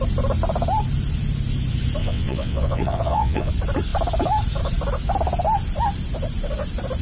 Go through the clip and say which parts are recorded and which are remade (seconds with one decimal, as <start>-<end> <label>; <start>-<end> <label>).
0.0-2.0 recorded; 2.0-3.5 remade; 3.5-7.0 recorded

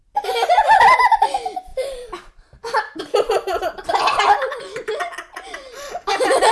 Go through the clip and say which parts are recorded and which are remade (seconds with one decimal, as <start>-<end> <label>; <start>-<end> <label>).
0.0-1.7 recorded; 1.7-4.6 remade; 4.6-5.3 recorded; 5.3-6.1 remade; 6.1-6.5 recorded

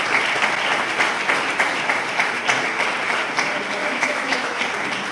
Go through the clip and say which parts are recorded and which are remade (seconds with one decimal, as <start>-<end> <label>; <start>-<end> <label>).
0.0-3.8 recorded; 3.8-4.6 remade; 4.6-5.1 recorded

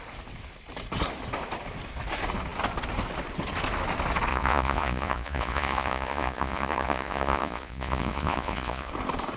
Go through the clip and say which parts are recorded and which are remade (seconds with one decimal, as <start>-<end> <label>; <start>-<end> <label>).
0.0-4.3 recorded; 4.3-8.9 remade; 8.9-9.4 recorded

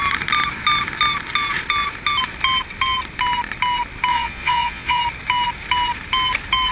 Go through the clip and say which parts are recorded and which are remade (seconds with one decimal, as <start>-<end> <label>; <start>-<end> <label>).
0.0-4.1 recorded; 4.1-5.0 remade; 5.0-6.7 recorded

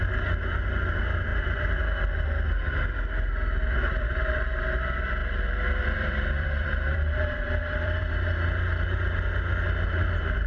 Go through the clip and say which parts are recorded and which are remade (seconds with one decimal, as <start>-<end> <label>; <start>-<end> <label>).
0.0-1.3 recorded; 1.3-1.8 remade; 1.8-3.8 recorded; 3.8-4.4 remade; 4.4-5.2 recorded; 5.2-8.1 remade; 8.1-10.5 recorded